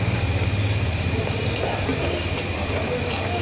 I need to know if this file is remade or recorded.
recorded